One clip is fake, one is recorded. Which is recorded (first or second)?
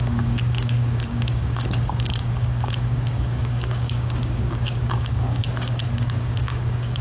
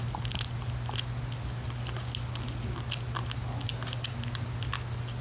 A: second